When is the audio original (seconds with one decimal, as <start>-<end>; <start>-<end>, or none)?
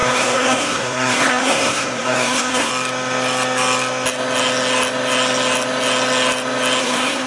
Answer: 2.7-6.8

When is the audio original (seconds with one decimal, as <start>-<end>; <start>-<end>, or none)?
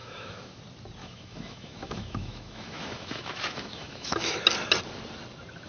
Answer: 0.6-1.0; 4.4-5.7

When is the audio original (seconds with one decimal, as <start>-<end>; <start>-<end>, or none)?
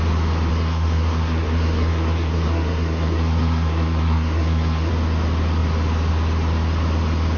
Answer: 0.0-0.5; 4.9-7.4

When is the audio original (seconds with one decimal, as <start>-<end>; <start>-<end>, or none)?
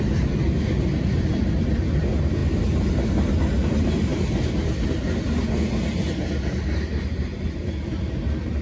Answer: 0.0-8.6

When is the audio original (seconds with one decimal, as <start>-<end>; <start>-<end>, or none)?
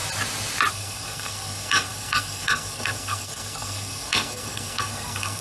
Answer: 0.0-0.7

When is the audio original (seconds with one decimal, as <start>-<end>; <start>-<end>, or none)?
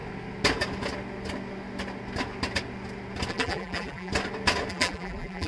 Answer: 0.0-3.3; 4.1-4.7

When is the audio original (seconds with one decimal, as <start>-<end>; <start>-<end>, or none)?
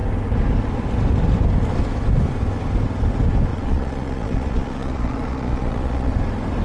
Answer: 0.0-3.5; 6.1-6.6